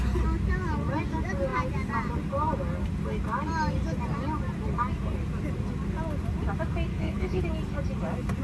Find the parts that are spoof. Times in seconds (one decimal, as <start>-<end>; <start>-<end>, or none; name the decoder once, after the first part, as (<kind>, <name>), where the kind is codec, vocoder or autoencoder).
6.9-7.4 (codec, HILCodec)